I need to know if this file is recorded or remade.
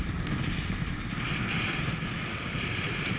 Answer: recorded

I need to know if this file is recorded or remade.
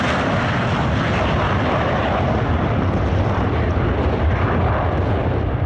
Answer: recorded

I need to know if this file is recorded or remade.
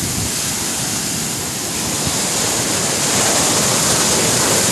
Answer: recorded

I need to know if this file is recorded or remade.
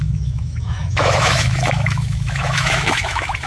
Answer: remade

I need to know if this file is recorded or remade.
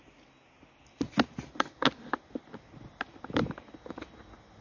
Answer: recorded